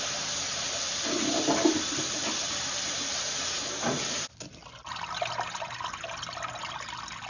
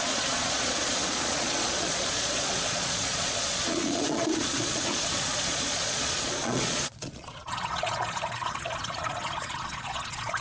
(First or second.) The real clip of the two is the first